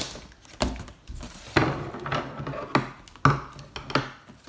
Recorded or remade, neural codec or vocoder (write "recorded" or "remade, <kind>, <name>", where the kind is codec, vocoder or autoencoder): recorded